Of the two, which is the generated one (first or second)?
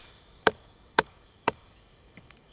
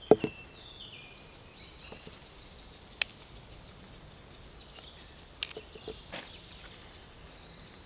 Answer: first